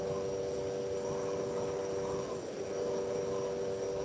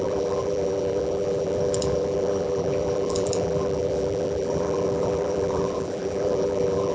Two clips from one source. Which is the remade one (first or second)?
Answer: second